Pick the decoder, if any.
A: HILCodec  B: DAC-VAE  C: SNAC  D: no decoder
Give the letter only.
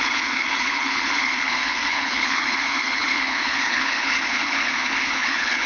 A